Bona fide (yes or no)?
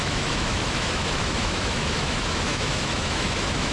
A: no